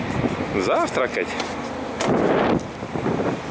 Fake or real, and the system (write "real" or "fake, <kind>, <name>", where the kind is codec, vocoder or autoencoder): real